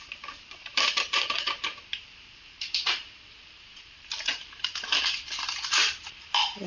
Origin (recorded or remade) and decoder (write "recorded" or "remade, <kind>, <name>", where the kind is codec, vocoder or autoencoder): remade, vocoder, BigVGAN v2